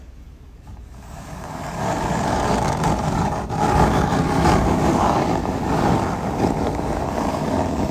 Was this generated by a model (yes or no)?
yes